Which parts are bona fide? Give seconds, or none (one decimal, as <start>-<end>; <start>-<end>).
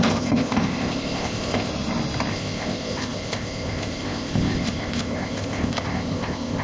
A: 1.7-2.3